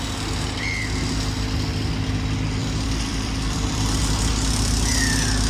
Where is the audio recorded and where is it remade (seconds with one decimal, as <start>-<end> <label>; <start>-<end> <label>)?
0.0-2.6 recorded; 2.6-4.0 remade; 4.0-5.5 recorded